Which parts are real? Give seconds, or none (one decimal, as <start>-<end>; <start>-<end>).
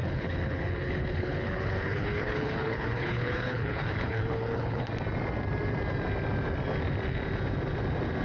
4.9-8.2